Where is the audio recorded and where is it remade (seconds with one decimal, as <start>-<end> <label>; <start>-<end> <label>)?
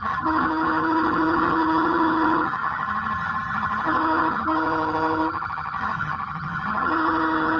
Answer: 0.0-7.6 remade